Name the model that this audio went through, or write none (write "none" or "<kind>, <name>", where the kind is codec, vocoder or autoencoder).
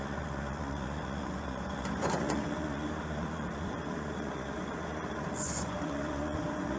vocoder, Vocos